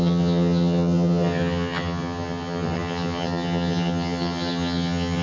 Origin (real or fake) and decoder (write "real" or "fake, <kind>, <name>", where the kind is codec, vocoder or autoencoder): fake, vocoder, HiFi-GAN